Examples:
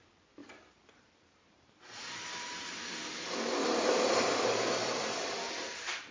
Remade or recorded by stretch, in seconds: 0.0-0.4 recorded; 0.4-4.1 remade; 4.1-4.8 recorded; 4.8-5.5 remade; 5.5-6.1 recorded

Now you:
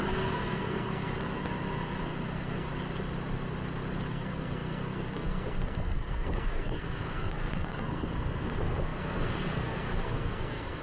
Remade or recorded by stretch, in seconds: 0.0-1.4 remade; 1.4-2.0 recorded; 2.0-2.7 remade; 2.7-4.1 recorded; 4.1-10.8 remade

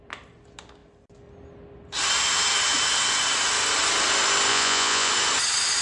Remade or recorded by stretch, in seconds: 0.0-4.5 recorded; 4.5-5.1 remade; 5.1-5.8 recorded

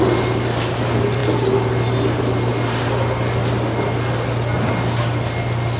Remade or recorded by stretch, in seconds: 0.0-5.8 recorded

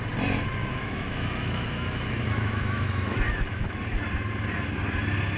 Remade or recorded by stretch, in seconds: 0.0-0.6 recorded; 0.6-3.8 remade; 3.8-5.4 recorded